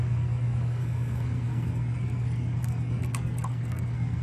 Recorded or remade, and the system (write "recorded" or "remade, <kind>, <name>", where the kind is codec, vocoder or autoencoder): remade, codec, SNAC